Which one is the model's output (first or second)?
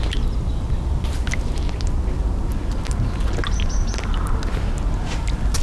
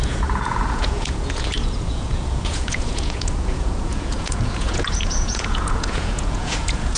second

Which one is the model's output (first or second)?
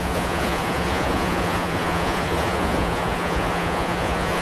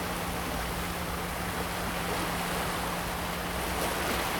first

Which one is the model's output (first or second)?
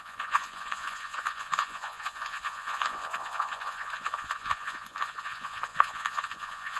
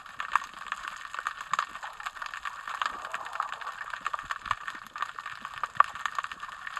first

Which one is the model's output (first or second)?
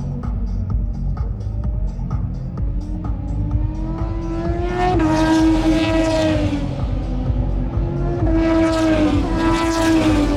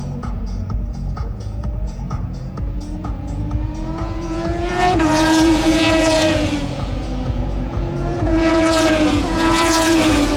second